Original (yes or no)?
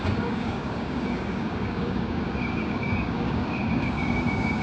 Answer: no